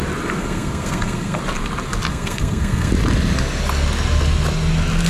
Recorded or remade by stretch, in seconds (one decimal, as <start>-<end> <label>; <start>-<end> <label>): 0.0-0.4 recorded; 0.4-1.4 remade; 1.4-2.1 recorded; 2.1-2.9 remade; 2.9-5.1 recorded